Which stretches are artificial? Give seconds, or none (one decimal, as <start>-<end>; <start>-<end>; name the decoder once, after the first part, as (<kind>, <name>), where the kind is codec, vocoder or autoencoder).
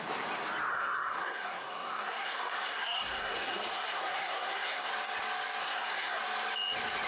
0.7-4.9 (codec, SNAC); 5.6-6.2